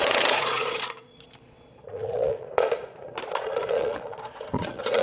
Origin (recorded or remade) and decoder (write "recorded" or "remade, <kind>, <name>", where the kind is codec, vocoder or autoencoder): remade, vocoder, Vocos